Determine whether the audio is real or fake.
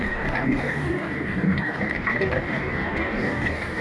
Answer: fake